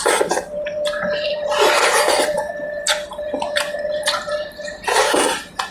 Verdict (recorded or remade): remade